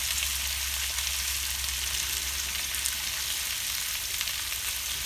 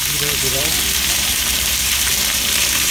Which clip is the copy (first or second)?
second